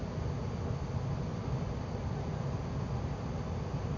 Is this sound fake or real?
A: real